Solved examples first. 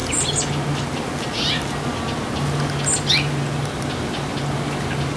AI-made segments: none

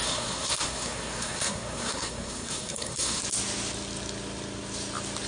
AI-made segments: 0.0-3.2 (codec, SNAC)